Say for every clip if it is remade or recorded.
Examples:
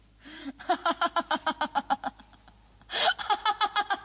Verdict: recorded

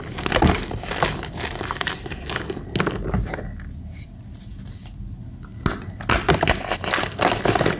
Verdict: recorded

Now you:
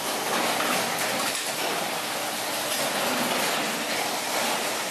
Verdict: recorded